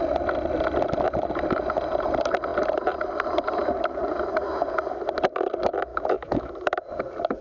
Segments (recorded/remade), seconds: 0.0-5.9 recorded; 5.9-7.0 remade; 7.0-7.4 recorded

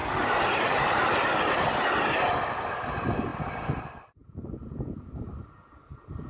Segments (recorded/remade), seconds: 0.0-6.3 recorded

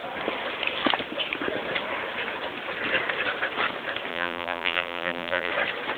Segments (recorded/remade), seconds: 0.0-4.1 recorded; 4.1-5.5 remade; 5.5-6.0 recorded

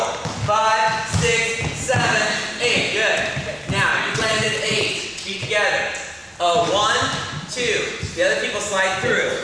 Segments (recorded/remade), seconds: 0.0-3.9 recorded; 3.9-5.5 remade; 5.5-9.4 recorded